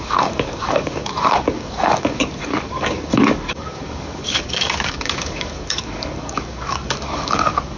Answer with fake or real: fake